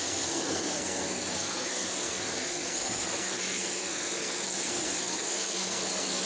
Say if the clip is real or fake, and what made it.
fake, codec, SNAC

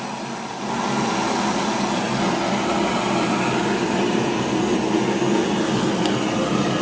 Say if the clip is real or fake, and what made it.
real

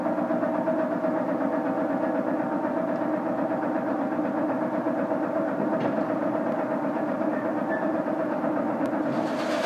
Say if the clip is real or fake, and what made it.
real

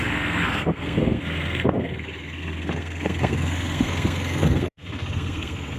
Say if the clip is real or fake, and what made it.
fake, codec, SNAC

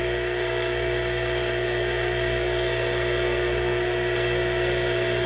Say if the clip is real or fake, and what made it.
fake, codec, SNAC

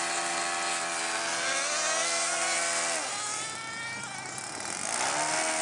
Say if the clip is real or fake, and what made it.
real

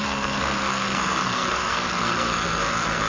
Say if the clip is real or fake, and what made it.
fake, codec, SNAC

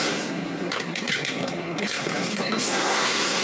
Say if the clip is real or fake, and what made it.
fake, codec, SNAC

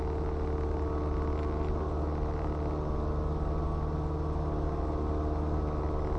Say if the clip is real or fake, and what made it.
real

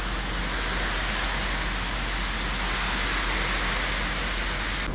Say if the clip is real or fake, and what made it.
real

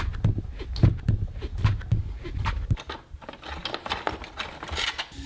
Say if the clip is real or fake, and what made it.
real